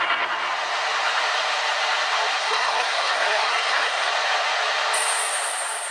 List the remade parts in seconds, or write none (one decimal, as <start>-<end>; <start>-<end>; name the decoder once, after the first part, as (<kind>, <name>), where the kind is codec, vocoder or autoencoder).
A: 2.4-4.1 (codec, SNAC)